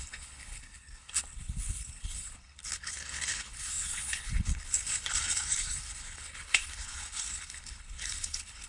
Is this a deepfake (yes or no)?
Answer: yes